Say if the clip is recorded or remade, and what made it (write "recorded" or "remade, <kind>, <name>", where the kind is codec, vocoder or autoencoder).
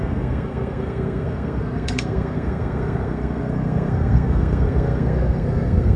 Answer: remade, codec, SNAC